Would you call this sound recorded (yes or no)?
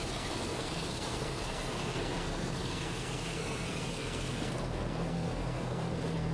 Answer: no